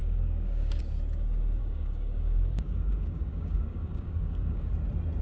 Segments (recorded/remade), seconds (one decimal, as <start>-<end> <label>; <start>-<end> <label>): 0.0-0.8 remade; 0.8-1.6 recorded; 1.6-4.7 remade; 4.7-5.2 recorded